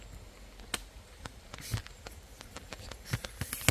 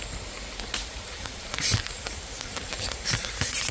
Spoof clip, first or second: second